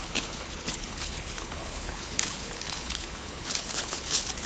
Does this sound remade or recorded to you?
remade